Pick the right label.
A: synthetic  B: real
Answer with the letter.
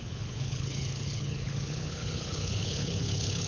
A